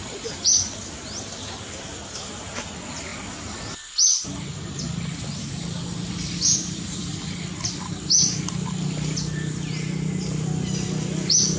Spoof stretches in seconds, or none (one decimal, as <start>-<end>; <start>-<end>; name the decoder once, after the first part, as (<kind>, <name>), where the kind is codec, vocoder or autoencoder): none